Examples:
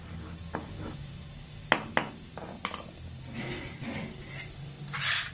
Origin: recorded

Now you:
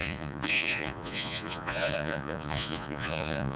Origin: remade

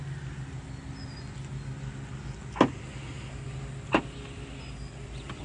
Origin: recorded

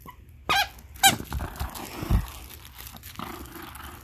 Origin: recorded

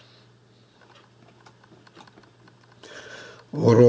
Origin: recorded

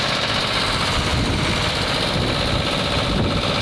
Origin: recorded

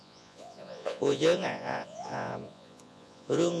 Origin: remade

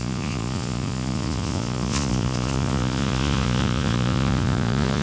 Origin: remade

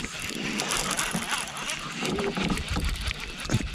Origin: recorded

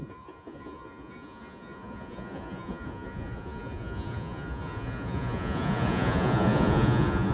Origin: remade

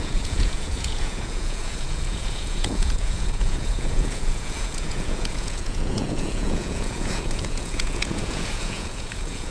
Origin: remade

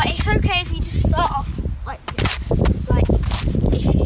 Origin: recorded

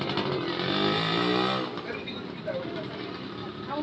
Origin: recorded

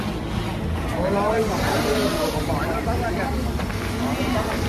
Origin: recorded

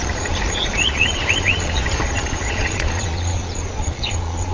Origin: remade